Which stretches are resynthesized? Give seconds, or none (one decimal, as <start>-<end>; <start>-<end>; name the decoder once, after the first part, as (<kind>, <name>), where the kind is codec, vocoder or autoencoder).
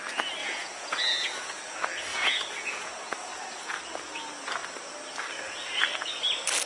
0.4-1.6 (vocoder, Vocos); 2.1-3.8